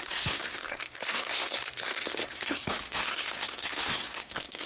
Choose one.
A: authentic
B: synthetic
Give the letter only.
B